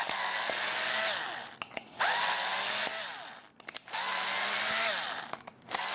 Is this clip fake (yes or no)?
no